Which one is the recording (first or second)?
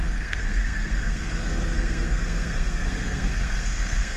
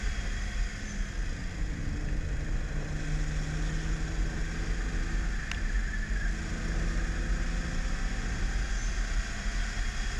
second